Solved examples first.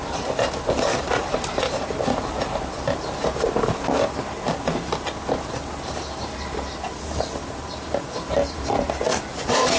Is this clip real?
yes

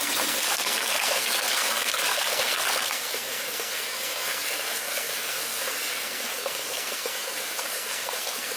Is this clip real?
no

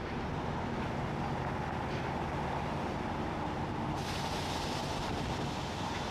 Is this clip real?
yes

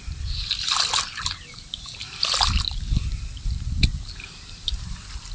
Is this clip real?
yes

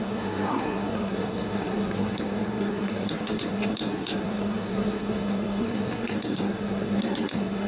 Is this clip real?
no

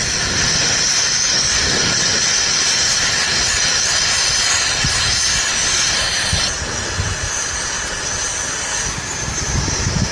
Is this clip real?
yes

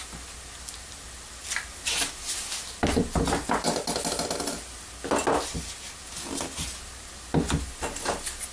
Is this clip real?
yes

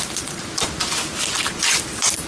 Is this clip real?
yes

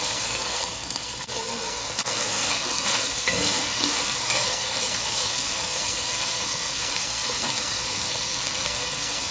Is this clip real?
no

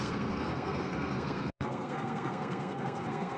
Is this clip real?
no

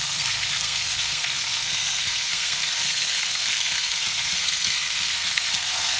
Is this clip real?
no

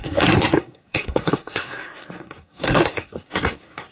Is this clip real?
no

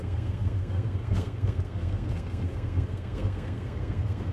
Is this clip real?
no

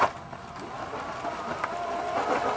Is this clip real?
yes